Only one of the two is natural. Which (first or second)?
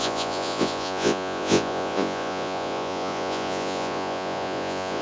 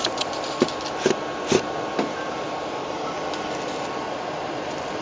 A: second